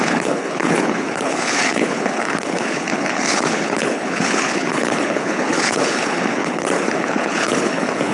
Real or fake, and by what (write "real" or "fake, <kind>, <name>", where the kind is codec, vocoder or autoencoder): fake, codec, HILCodec